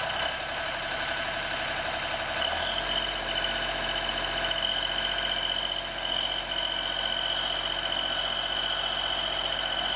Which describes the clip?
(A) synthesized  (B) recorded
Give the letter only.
B